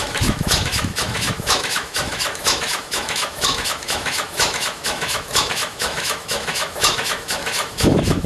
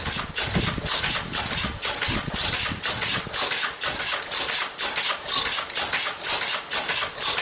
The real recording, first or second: second